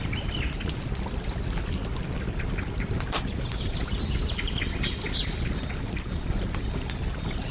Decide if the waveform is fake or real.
fake